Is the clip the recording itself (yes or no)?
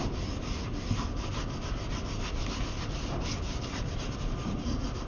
yes